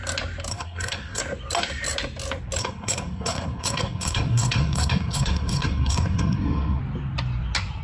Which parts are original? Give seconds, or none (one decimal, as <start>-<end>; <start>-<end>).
0.0-0.5; 1.2-2.6; 6.8-7.8